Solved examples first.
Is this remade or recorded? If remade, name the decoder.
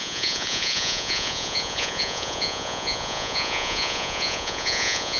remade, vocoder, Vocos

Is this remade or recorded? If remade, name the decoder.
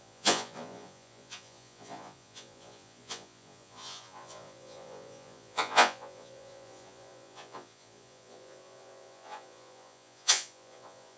remade, vocoder, Vocos